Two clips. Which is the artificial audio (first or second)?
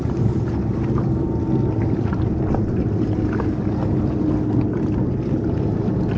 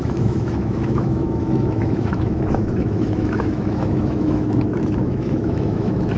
second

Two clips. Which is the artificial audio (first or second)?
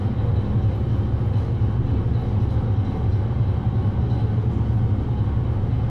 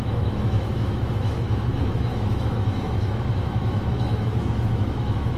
second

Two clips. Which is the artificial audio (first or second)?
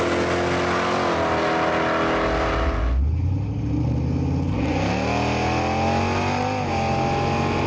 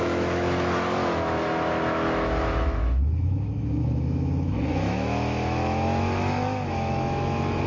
second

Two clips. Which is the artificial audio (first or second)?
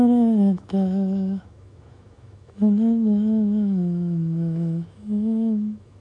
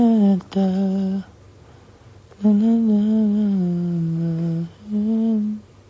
first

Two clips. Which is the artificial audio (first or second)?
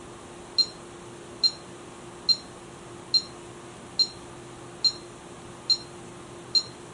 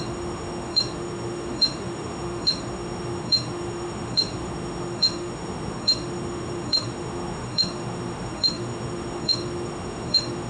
second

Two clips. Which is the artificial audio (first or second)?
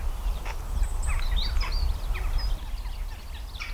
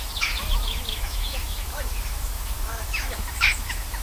second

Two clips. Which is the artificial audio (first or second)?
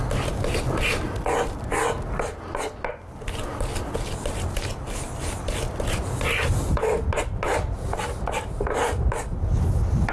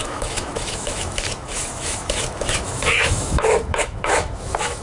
second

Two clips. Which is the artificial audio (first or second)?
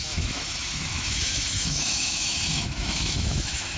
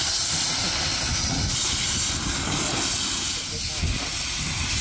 first